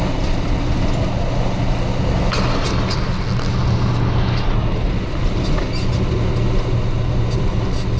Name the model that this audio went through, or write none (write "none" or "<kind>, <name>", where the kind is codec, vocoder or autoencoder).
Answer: none